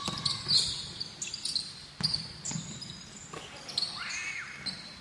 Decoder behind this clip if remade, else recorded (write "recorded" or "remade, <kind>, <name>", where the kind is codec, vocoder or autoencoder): recorded